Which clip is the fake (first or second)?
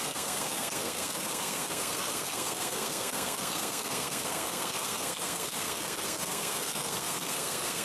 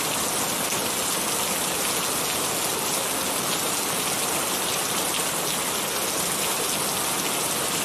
first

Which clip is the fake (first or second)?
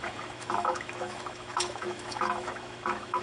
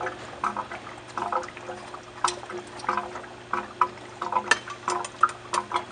first